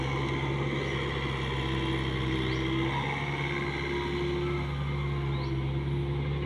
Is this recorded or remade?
recorded